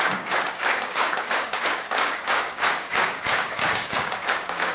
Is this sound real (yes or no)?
no